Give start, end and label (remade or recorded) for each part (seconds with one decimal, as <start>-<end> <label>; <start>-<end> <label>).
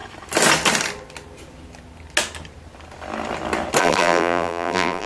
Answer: 0.0-3.8 recorded; 3.8-5.1 remade